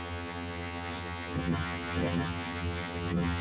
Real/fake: fake